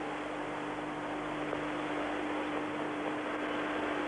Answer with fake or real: real